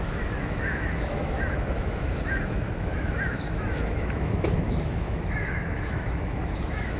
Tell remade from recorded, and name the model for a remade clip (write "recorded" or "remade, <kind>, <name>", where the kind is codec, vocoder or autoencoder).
remade, autoencoder, DAC-VAE